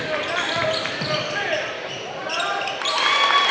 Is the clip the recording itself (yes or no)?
no